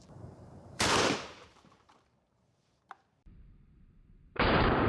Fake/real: fake